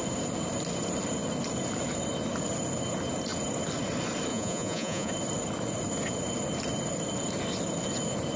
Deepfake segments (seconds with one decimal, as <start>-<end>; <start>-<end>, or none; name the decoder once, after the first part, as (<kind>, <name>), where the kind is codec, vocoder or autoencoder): 4.3-5.1 (vocoder, Vocos)